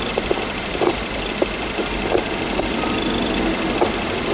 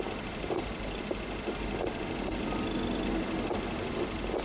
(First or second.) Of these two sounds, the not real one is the first